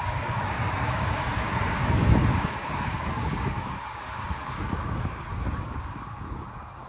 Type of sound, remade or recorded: remade